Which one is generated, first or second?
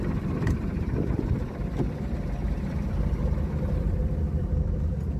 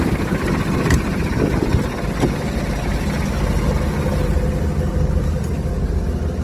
first